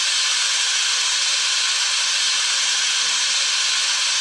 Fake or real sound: real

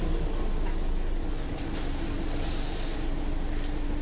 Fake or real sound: real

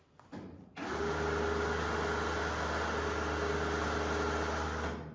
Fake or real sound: real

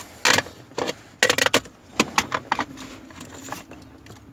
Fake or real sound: real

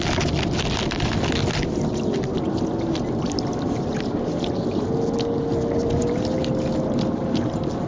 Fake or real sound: real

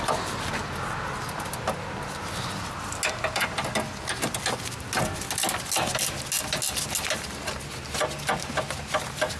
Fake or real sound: real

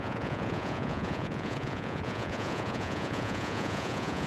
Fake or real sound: fake